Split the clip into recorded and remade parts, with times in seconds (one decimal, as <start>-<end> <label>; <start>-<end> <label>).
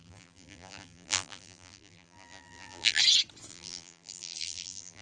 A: 0.0-3.0 remade; 3.0-3.5 recorded; 3.5-5.0 remade